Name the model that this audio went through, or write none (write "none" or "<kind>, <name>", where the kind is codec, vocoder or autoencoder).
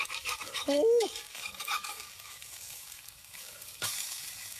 codec, DAC